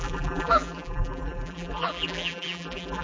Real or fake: fake